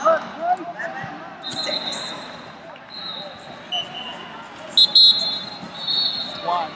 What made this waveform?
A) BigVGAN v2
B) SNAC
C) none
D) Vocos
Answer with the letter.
C